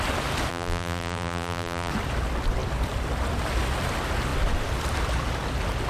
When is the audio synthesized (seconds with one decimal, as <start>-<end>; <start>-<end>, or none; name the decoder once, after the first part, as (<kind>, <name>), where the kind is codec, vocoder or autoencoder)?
0.5-1.9 (vocoder, BigVGAN v2)